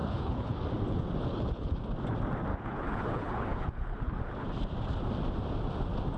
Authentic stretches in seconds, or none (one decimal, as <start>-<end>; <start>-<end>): 0.6-1.3; 1.8-2.5; 4.2-6.2